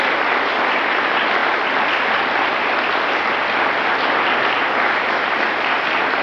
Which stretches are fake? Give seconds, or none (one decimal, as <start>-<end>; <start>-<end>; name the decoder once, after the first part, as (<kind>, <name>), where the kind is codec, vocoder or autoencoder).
none